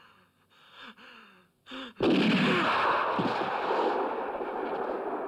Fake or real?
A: real